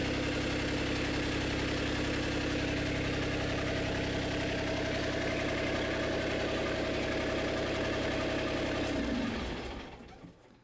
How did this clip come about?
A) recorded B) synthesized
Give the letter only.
A